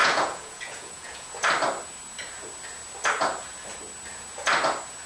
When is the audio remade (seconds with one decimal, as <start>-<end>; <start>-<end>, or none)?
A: 0.0-1.3